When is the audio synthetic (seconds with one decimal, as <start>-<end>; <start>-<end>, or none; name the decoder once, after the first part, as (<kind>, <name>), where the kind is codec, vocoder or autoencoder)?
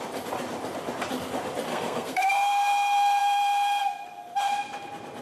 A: 1.7-2.3 (codec, SNAC)